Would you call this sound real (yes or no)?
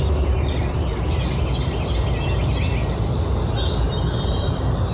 yes